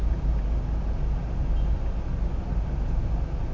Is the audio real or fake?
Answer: real